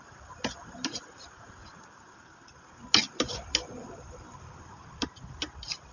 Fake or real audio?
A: real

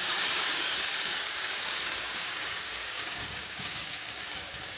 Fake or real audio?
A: fake